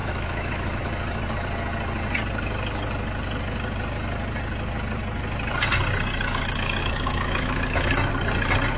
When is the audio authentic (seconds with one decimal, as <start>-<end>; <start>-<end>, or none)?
0.8-6.8; 8.1-8.8